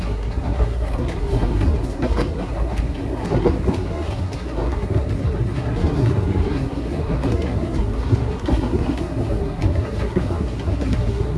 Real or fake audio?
fake